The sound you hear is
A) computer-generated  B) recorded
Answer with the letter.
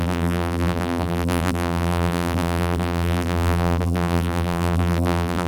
A